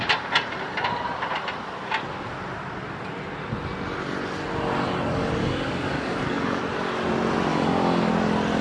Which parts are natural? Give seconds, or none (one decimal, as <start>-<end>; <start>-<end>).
0.0-5.4; 6.6-7.5; 8.1-8.6